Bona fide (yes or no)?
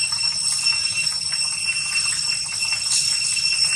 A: yes